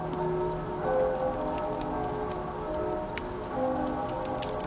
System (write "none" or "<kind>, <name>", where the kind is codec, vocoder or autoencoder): none